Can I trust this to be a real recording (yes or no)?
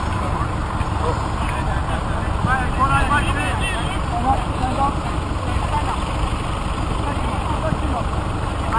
yes